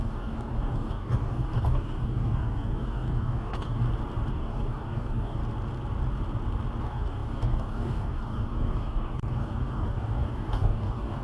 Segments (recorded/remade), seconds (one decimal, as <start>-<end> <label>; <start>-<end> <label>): 0.0-3.8 remade; 3.8-4.3 recorded; 4.3-5.4 remade; 5.4-6.8 recorded; 6.8-11.2 remade